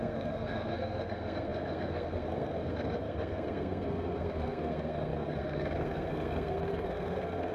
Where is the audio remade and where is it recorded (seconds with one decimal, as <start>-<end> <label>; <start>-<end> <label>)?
0.0-7.5 remade